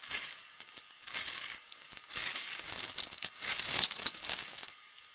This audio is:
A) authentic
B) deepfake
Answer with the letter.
B